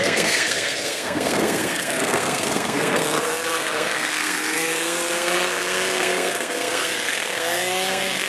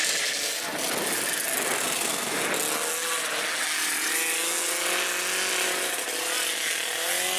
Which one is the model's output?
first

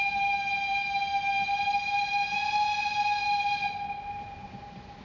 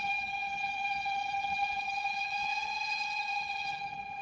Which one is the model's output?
second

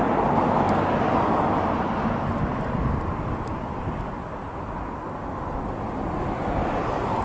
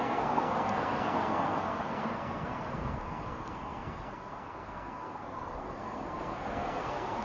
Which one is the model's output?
second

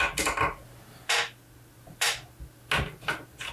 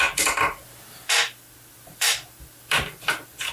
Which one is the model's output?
second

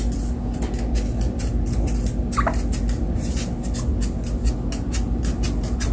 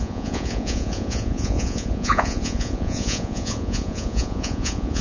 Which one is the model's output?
second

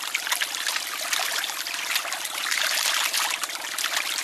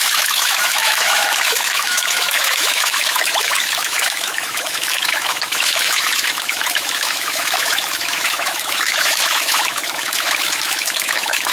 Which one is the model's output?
second